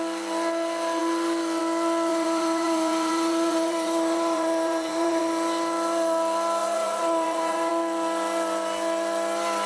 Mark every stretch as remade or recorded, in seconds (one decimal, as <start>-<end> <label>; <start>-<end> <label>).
0.0-2.1 recorded; 2.1-5.2 remade; 5.2-6.6 recorded; 6.6-7.7 remade; 7.7-9.7 recorded